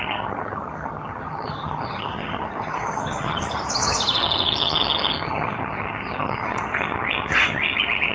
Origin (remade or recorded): remade